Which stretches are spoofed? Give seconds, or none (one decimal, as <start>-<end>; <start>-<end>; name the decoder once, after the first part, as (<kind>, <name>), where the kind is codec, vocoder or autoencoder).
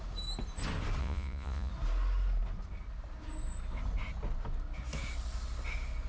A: 1.0-1.7 (vocoder, Vocos)